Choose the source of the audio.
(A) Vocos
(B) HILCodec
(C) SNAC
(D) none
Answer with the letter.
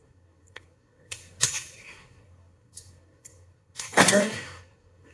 C